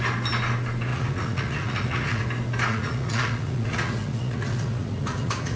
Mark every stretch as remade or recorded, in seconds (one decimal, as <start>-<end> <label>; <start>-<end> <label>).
0.0-0.9 recorded; 0.9-2.2 remade; 2.2-2.7 recorded; 2.7-5.6 remade

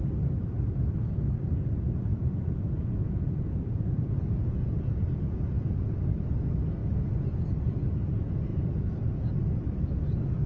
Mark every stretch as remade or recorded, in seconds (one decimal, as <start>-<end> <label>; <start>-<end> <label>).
0.0-2.1 recorded; 2.1-6.0 remade; 6.0-6.8 recorded; 6.8-7.4 remade; 7.4-8.5 recorded; 8.5-9.2 remade; 9.2-10.5 recorded

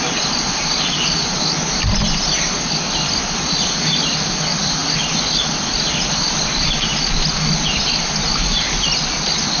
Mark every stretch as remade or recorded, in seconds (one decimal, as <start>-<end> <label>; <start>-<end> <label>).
0.0-9.6 recorded

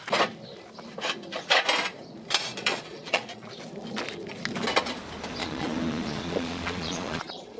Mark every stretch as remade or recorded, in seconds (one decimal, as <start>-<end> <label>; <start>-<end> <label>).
0.0-2.5 recorded; 2.5-3.5 remade; 3.5-5.4 recorded; 5.4-7.6 remade

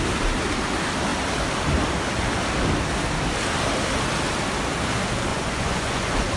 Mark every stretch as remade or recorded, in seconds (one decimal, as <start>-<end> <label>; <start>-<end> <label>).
0.0-5.3 recorded; 5.3-6.4 remade